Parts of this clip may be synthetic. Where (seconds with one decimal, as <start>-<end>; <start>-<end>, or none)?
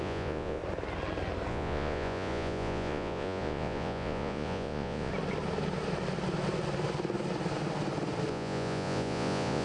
0.0-0.6; 1.5-5.1; 8.3-9.6